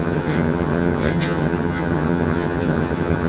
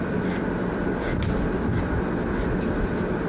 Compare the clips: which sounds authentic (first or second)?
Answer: second